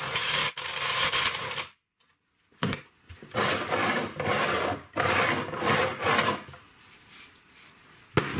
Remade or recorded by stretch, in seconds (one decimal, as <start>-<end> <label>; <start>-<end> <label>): 0.0-8.4 recorded